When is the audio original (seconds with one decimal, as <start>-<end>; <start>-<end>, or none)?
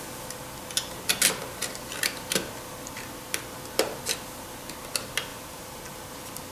0.0-1.6; 2.7-5.3; 5.8-6.5